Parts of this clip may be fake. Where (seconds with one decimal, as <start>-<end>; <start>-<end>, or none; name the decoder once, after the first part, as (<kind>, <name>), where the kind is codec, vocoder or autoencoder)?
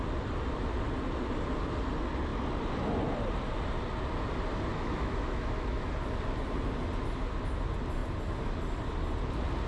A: 4.7-5.9 (autoencoder, DAC-VAE)